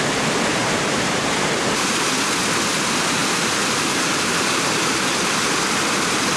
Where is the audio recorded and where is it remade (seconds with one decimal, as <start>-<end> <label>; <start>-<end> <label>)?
0.0-0.6 recorded; 0.6-1.9 remade; 1.9-3.2 recorded; 3.2-4.0 remade; 4.0-6.4 recorded